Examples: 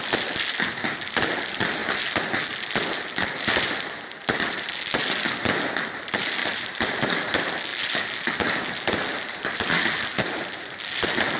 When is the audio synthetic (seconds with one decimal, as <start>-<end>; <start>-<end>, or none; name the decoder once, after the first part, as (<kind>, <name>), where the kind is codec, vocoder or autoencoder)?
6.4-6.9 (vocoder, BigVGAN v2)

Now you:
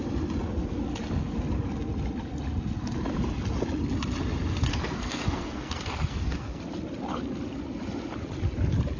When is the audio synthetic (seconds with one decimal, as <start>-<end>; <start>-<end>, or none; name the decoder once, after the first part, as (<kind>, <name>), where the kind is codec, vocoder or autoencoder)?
4.7-6.6 (codec, SNAC)

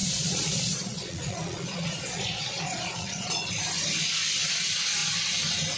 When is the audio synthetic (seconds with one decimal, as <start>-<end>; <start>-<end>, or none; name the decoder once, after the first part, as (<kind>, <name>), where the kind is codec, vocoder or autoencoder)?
0.0-3.5 (vocoder, Vocos)

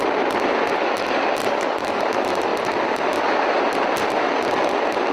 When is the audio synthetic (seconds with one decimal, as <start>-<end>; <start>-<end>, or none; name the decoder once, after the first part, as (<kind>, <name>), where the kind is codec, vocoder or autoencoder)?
1.4-2.0 (codec, DAC)

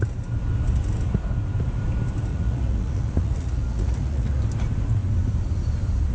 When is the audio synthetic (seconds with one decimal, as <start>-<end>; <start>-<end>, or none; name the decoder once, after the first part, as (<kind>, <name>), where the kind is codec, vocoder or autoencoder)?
2.3-4.4 (vocoder, Vocos)

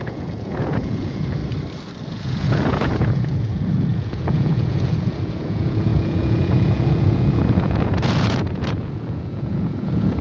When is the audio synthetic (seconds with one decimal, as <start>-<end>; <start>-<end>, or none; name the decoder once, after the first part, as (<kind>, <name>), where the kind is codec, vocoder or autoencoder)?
0.0-1.4 (vocoder, Vocos); 2.1-10.2